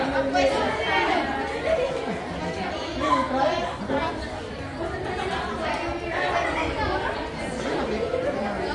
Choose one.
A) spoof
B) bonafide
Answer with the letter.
B